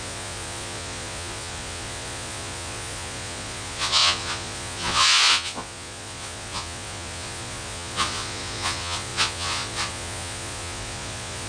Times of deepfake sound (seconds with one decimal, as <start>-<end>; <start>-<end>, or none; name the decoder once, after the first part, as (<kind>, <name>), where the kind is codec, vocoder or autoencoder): 0.0-11.5 (vocoder, Vocos)